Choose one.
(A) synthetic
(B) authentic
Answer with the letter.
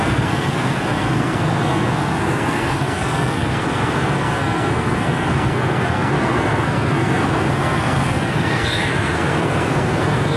A